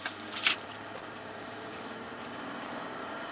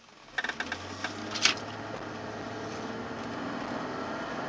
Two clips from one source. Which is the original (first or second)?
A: second